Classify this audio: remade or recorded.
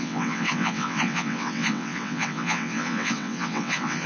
remade